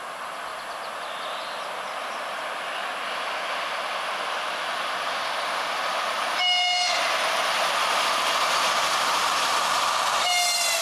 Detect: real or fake real